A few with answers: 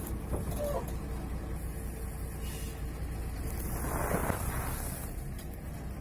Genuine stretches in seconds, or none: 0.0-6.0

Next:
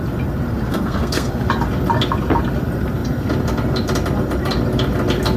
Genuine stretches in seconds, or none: 0.0-0.7; 1.3-5.4

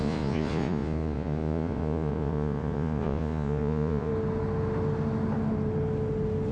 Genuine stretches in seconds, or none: 4.1-6.5